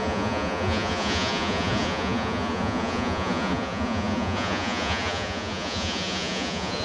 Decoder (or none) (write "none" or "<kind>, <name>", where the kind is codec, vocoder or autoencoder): vocoder, Vocos